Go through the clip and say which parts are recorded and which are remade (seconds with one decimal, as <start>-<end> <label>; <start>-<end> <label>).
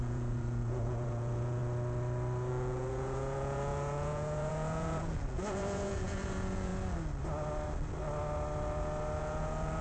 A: 0.0-1.6 remade; 1.6-2.5 recorded; 2.5-6.7 remade; 6.7-9.2 recorded; 9.2-9.8 remade